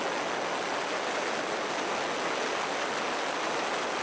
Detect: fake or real real